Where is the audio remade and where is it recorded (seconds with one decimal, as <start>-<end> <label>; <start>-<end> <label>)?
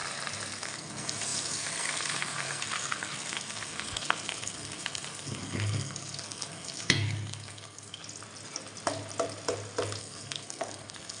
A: 0.0-0.5 recorded; 0.5-8.0 remade; 8.0-10.0 recorded; 10.0-11.2 remade